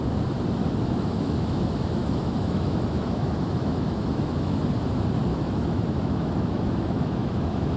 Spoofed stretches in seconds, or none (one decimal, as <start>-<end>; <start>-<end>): 0.6-4.6; 5.3-7.8